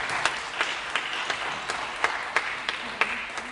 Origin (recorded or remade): recorded